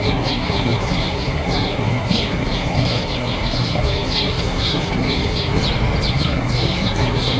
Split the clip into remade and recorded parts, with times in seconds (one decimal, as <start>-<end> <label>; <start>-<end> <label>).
0.0-5.6 remade; 5.6-6.1 recorded; 6.1-7.4 remade